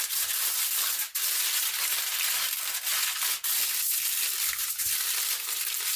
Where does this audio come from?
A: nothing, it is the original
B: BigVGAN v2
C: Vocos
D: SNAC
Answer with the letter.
A